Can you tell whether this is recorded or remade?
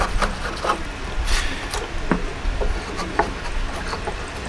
recorded